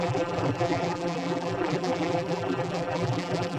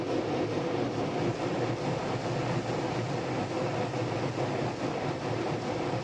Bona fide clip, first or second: second